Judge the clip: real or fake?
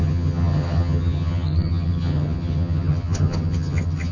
fake